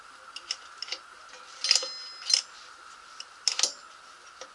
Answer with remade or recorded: recorded